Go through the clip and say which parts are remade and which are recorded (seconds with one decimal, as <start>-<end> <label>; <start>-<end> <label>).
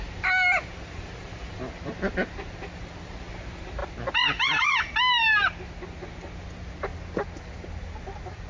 0.0-8.5 recorded